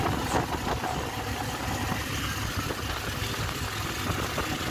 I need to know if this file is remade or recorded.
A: recorded